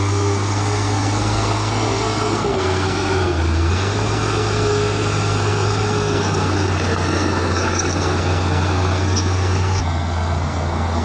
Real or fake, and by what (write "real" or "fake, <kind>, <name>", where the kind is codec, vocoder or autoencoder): fake, codec, SNAC